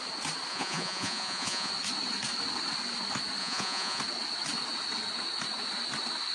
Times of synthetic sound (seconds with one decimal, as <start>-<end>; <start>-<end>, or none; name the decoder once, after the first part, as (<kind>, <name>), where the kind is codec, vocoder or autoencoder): 0.5-1.7 (vocoder, Vocos); 3.4-4.0